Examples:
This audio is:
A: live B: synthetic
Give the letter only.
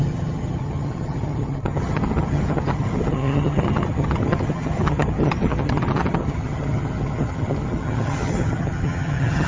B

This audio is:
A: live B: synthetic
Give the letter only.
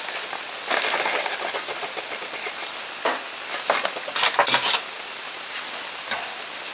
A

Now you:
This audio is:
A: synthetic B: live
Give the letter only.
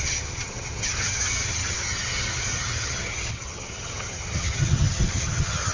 A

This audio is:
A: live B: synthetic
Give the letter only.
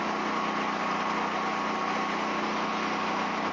A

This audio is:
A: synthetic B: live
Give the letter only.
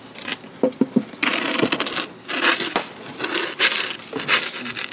B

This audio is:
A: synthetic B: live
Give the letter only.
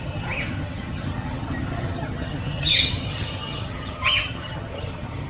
A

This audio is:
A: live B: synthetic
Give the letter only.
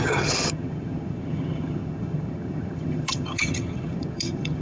B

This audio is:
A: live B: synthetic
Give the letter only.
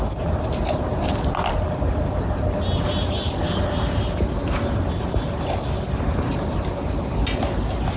A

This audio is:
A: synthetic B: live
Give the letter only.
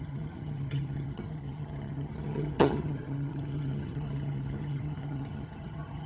A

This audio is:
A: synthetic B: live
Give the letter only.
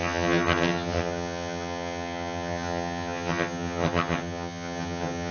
A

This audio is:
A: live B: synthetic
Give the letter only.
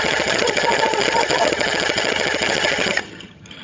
B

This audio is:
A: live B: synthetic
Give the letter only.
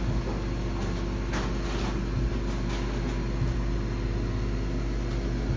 A